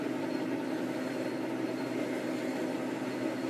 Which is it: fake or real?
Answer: real